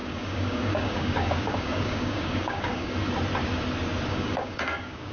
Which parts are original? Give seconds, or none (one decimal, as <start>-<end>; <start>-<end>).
2.9-4.1